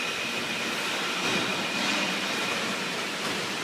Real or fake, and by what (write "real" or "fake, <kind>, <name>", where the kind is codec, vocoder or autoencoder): real